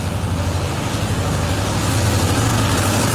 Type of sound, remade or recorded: recorded